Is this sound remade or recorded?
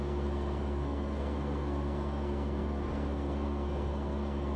remade